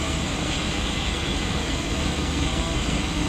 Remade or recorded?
remade